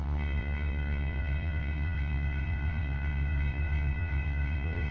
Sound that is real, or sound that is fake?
fake